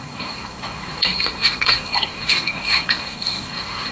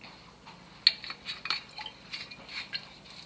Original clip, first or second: second